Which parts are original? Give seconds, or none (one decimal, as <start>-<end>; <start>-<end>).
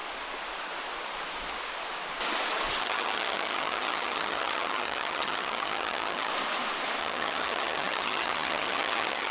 0.0-2.8; 6.3-7.0